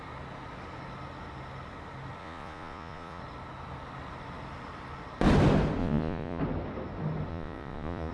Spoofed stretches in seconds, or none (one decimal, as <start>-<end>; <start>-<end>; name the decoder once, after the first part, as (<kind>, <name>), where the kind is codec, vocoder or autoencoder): 2.2-3.2 (vocoder, Vocos); 5.8-6.4; 7.3-8.1